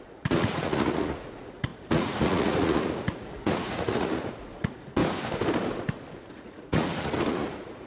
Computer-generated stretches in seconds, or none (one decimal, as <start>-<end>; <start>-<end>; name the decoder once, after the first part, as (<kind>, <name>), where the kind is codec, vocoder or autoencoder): 0.0-5.0 (vocoder, Vocos); 6.3-7.9